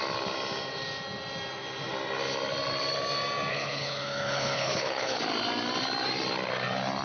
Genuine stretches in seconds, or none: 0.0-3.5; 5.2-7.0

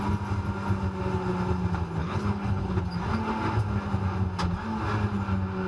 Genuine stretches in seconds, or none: 0.0-2.0; 2.8-5.7

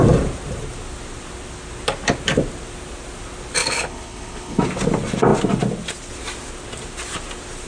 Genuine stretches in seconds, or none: 0.0-3.6; 4.6-7.7

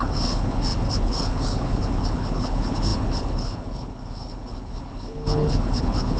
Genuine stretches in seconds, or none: none